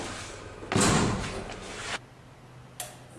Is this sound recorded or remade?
recorded